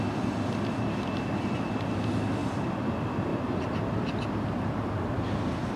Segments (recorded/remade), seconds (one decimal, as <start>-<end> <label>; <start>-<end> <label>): 0.0-2.4 recorded; 2.4-2.9 remade; 2.9-3.3 recorded; 3.3-5.0 remade; 5.0-5.8 recorded